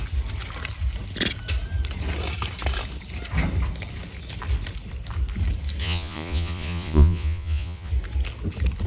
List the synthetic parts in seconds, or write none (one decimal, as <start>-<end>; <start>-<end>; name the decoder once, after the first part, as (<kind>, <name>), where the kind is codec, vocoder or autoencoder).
5.8-7.9 (vocoder, Vocos)